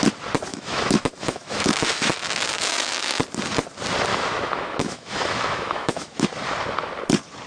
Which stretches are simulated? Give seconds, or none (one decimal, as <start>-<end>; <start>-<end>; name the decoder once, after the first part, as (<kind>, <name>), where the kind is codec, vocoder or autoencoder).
0.5-3.2 (autoencoder, DAC-VAE); 4.1-6.3